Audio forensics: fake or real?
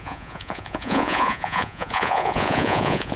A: fake